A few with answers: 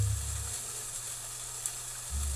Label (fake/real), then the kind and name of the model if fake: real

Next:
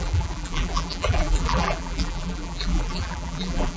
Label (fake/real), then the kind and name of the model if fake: fake, vocoder, BigVGAN v2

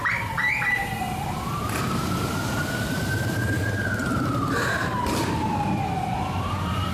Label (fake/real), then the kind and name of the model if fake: fake, vocoder, BigVGAN v2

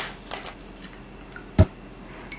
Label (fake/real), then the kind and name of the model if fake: real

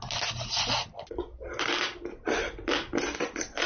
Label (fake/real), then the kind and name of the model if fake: real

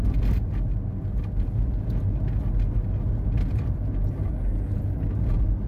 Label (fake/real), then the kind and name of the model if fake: real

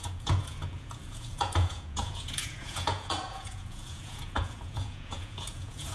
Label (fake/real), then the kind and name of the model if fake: fake, vocoder, Vocos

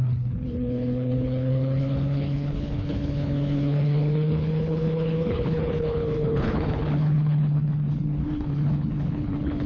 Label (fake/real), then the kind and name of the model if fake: fake, codec, HILCodec